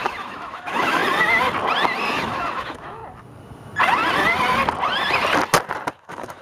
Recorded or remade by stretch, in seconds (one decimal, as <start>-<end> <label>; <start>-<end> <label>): 0.0-1.0 remade; 1.0-2.1 recorded; 2.1-3.0 remade; 3.0-5.9 recorded; 5.9-6.4 remade